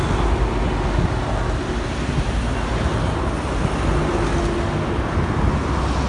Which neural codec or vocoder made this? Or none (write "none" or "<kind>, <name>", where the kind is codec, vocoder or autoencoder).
none